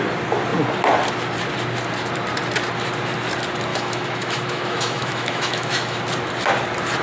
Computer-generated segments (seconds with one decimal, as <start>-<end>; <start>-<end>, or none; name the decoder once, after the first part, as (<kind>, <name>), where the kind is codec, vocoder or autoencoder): 3.7-6.0 (autoencoder, DAC-VAE)